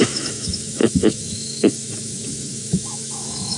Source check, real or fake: fake